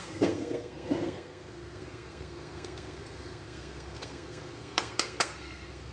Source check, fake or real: fake